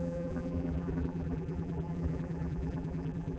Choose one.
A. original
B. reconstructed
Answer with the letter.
B